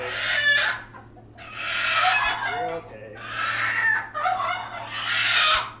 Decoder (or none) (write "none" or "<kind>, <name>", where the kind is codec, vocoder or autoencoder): none